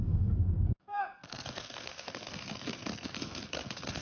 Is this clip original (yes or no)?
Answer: no